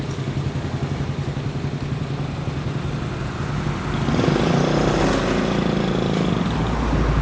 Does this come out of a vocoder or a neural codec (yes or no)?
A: no